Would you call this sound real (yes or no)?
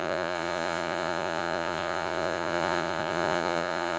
no